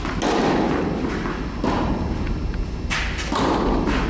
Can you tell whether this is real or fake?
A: real